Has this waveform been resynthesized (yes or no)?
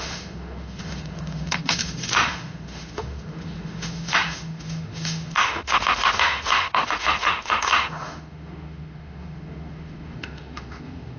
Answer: yes